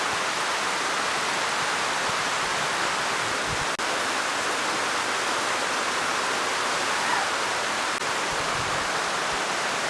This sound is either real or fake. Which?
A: real